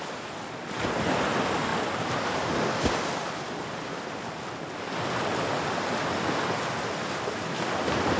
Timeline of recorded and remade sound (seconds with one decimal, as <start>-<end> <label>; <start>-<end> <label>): 0.0-8.2 recorded